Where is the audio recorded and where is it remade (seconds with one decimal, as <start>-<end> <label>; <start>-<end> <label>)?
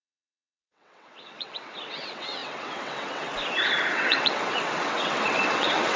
0.0-3.3 remade; 3.3-3.9 recorded; 3.9-6.0 remade